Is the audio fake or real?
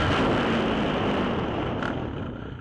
real